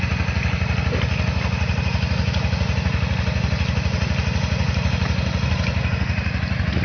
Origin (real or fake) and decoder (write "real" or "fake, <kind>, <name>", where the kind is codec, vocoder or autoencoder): real